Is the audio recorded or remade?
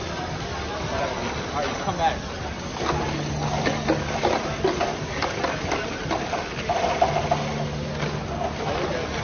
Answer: recorded